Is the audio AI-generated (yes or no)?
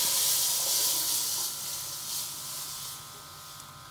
no